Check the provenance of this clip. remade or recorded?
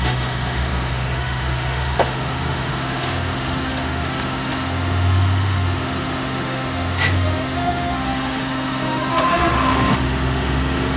remade